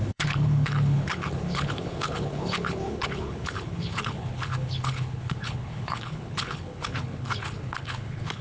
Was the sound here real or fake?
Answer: fake